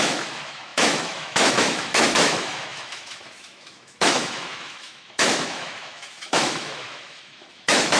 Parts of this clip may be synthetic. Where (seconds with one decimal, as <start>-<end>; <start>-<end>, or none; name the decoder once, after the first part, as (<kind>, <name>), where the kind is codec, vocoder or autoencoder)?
0.0-8.0 (autoencoder, DAC-VAE)